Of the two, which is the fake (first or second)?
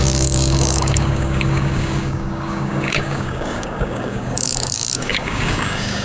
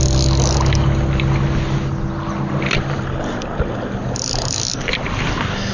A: first